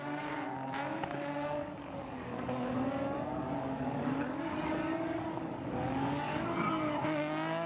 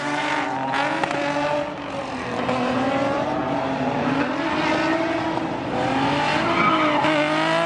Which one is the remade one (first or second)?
first